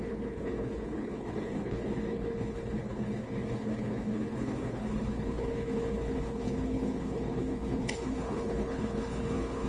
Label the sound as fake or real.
fake